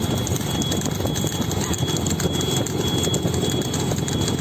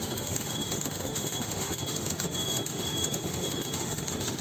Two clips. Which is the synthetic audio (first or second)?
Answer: second